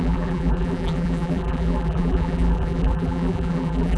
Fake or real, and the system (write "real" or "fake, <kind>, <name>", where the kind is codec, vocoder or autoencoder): fake, vocoder, BigVGAN v2